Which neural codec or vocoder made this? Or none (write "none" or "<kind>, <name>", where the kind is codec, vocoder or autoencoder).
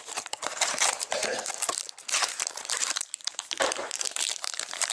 vocoder, BigVGAN v2